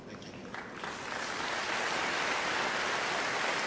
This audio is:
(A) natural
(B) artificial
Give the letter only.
A